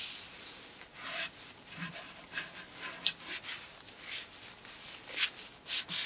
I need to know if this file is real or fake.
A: real